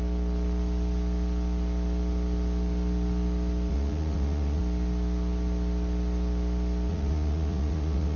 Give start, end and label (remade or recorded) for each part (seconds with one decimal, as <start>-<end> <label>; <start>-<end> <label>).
0.0-3.7 recorded; 3.7-4.6 remade; 4.6-6.9 recorded; 6.9-8.2 remade